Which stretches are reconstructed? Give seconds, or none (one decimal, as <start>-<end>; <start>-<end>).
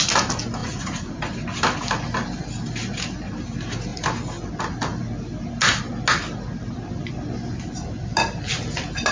0.6-1.2